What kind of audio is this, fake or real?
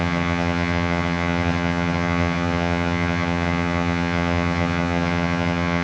fake